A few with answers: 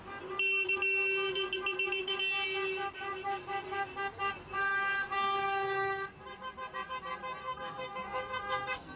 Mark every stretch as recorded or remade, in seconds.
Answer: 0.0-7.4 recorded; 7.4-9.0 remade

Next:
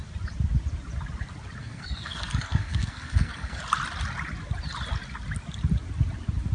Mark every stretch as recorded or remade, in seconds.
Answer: 0.0-1.6 recorded; 1.6-3.6 remade; 3.6-6.5 recorded

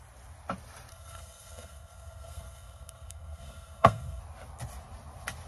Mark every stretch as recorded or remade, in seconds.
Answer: 0.0-0.9 recorded; 0.9-4.2 remade; 4.2-5.5 recorded

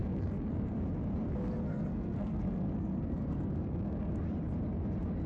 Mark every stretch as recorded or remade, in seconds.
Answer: 0.0-0.7 remade; 0.7-1.7 recorded; 1.7-4.1 remade; 4.1-5.3 recorded

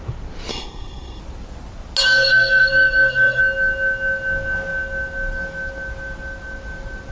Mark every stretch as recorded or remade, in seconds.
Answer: 0.0-0.5 recorded; 0.5-1.2 remade; 1.2-2.0 recorded; 2.0-3.4 remade; 3.4-7.1 recorded

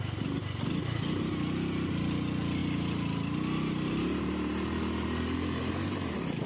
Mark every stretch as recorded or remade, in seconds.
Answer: 0.0-6.5 recorded

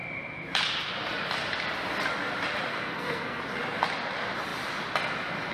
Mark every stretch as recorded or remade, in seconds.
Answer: 0.0-2.7 recorded; 2.7-3.4 remade; 3.4-5.5 recorded

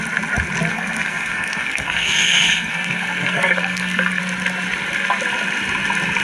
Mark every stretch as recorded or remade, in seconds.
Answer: 0.0-0.7 recorded; 0.7-4.2 remade; 4.2-6.2 recorded